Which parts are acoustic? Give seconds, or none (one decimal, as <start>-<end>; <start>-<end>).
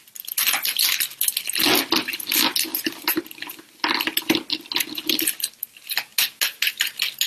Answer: 0.0-7.3